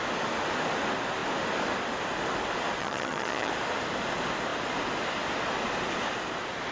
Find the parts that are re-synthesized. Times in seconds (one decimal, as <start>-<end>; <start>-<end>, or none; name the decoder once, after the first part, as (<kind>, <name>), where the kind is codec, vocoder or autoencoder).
2.8-3.5 (vocoder, HiFi-GAN)